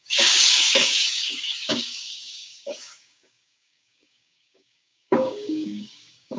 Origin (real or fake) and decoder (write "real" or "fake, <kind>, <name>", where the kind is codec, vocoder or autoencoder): fake, codec, DAC